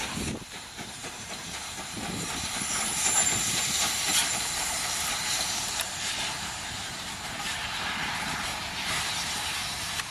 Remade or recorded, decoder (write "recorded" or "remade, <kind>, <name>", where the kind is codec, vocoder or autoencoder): remade, vocoder, BigVGAN v2